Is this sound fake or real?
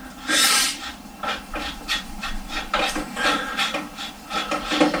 real